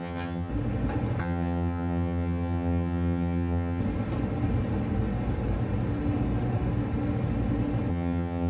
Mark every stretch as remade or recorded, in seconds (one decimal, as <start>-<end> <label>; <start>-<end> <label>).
0.0-0.5 remade; 0.5-1.2 recorded; 1.2-3.8 remade; 3.8-7.9 recorded; 7.9-8.5 remade